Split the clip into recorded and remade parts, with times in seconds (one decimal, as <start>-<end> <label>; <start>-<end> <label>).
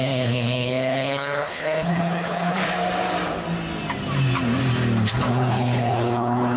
0.0-2.6 remade; 2.6-5.3 recorded; 5.3-6.6 remade